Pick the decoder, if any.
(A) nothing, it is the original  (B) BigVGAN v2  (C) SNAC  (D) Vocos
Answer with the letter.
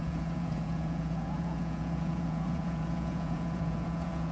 D